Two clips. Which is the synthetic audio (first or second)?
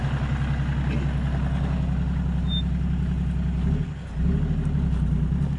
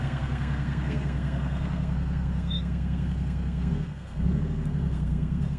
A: second